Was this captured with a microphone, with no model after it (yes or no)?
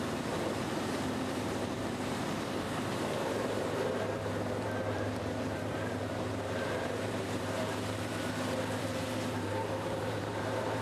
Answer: no